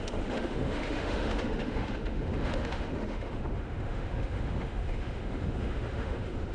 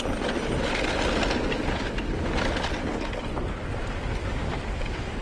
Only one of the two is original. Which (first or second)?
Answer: second